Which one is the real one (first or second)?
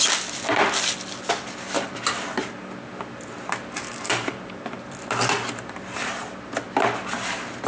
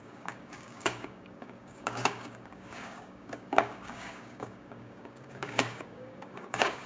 first